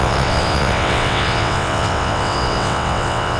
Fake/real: fake